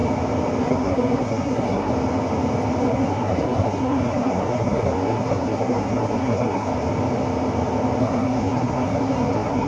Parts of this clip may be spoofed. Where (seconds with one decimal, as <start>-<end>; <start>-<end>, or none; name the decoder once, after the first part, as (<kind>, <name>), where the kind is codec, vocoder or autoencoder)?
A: 0.6-1.9 (codec, SNAC); 2.8-6.7; 8.0-9.7